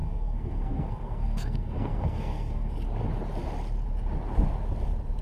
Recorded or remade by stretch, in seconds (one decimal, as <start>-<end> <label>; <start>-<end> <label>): 0.0-2.7 remade; 2.7-5.2 recorded